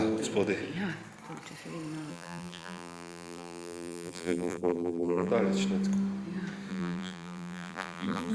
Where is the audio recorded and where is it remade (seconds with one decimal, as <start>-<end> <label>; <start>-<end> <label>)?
0.0-2.1 recorded; 2.1-5.3 remade; 5.3-6.7 recorded; 6.7-8.3 remade